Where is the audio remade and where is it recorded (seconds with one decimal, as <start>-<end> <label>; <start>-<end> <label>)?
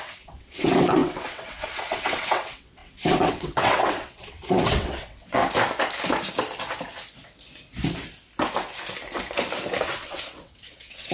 0.0-5.4 remade; 5.4-9.8 recorded; 9.8-11.1 remade